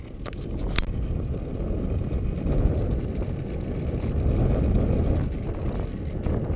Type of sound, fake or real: real